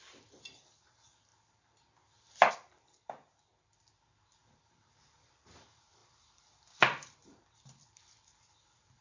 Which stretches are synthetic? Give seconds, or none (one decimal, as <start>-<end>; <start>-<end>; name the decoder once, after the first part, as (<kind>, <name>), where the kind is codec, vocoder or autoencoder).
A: 0.0-9.0 (vocoder, BigVGAN v2)